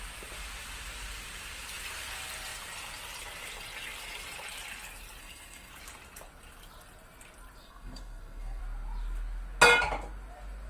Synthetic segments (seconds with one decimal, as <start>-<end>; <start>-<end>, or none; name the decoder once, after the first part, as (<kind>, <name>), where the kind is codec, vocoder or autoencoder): 5.2-5.7 (codec, SNAC); 7.6-8.6

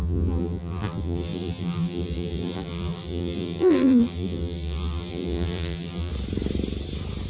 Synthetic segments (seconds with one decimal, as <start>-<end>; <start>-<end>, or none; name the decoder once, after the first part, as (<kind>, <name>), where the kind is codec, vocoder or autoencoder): 0.0-6.1 (vocoder, BigVGAN v2)

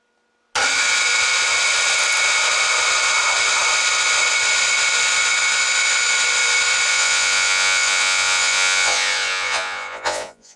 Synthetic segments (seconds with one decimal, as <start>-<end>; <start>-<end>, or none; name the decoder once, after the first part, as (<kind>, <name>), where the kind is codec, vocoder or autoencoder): 6.9-10.6 (vocoder, Vocos)

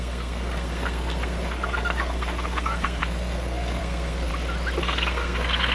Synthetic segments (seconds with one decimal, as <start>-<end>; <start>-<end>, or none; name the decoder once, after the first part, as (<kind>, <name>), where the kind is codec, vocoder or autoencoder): 0.0-4.3 (codec, SNAC); 4.8-5.7